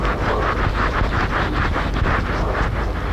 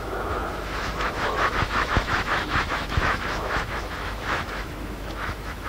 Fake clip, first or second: second